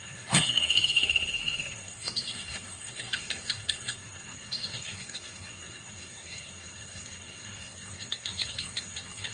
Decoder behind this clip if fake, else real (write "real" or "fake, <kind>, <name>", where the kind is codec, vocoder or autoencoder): fake, codec, SNAC